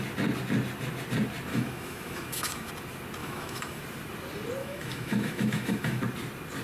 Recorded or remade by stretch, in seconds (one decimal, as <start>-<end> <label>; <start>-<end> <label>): 0.0-1.5 recorded; 1.5-2.7 remade; 2.7-3.2 recorded; 3.2-3.8 remade; 3.8-4.6 recorded; 4.6-6.0 remade; 6.0-6.6 recorded